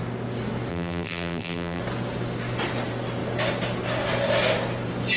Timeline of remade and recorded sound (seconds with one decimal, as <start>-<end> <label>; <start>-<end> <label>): 0.0-0.7 recorded; 0.7-1.8 remade; 1.8-5.2 recorded